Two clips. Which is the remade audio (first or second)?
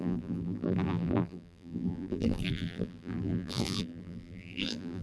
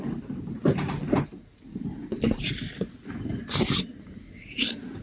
first